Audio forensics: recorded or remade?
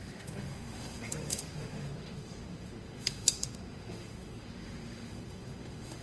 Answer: remade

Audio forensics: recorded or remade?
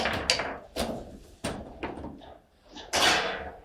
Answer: recorded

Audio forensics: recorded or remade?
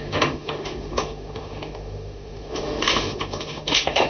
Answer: remade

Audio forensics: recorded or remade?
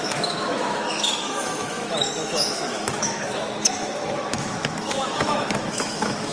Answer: remade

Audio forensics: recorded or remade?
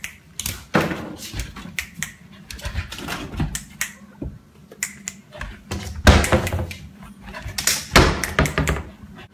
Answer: recorded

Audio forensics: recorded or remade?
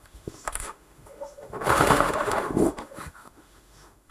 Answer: remade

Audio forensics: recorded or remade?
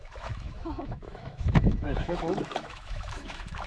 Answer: remade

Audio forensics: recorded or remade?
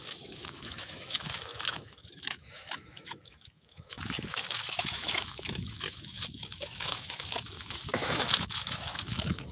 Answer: remade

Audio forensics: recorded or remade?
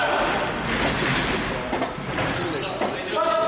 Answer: recorded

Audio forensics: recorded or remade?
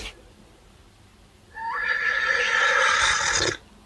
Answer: recorded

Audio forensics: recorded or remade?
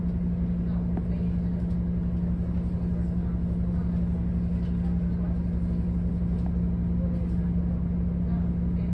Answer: recorded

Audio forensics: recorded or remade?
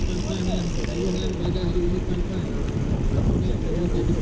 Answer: recorded